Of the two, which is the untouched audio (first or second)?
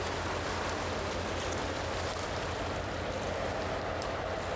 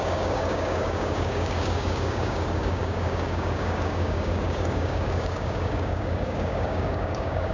first